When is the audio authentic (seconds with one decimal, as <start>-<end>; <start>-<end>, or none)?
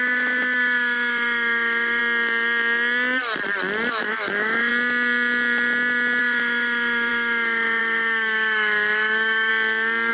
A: 2.0-3.9; 4.7-6.2; 9.5-10.1